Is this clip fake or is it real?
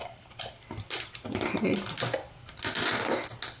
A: real